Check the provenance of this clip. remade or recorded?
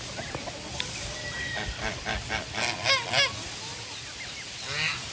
recorded